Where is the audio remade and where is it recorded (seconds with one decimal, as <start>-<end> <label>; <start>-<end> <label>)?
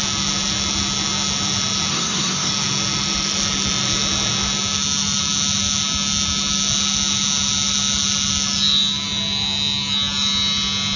0.0-1.9 recorded; 1.9-2.5 remade; 2.5-11.0 recorded